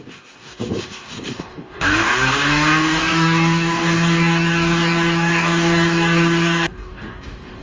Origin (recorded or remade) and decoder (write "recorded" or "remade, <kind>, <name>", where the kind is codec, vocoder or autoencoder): remade, codec, DAC